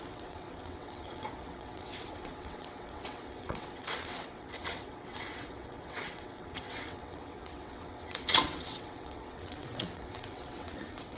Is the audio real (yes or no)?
no